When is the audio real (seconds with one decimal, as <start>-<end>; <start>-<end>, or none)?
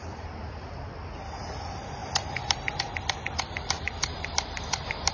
0.8-5.1